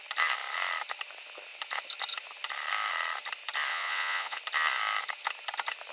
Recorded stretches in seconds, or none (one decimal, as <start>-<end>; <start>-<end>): 0.0-3.7; 4.4-5.9